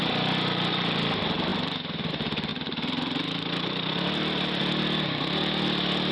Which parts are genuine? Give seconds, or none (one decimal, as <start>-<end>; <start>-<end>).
0.0-1.5; 2.1-2.5; 4.6-6.1